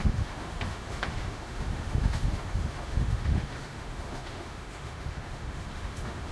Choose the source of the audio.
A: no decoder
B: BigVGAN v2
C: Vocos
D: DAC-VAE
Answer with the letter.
D